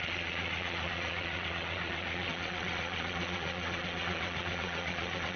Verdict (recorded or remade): remade